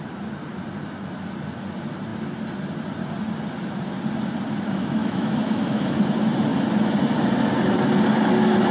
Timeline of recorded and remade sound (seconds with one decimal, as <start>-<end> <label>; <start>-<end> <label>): 0.0-4.7 recorded; 4.7-6.0 remade; 6.0-8.7 recorded